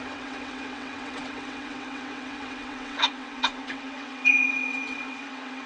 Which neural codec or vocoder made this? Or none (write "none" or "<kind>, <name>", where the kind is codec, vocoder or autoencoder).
vocoder, WaveNeXt